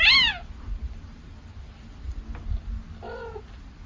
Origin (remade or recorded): recorded